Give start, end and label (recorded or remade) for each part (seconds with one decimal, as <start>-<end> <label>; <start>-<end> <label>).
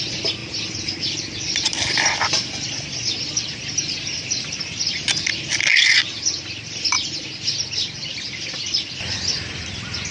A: 0.0-0.4 recorded; 0.4-5.0 remade; 5.0-5.7 recorded; 5.7-9.7 remade; 9.7-10.1 recorded